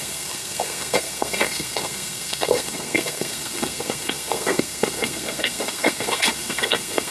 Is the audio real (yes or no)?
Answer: no